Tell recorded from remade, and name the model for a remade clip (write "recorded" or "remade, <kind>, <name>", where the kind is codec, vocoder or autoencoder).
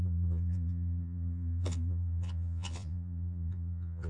remade, vocoder, Vocos